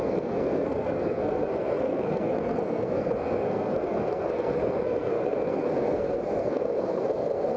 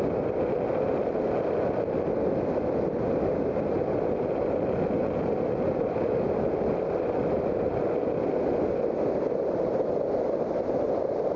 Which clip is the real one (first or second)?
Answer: second